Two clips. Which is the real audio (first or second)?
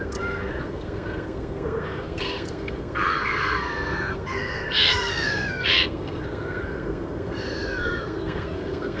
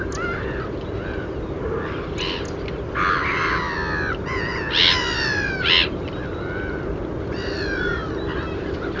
second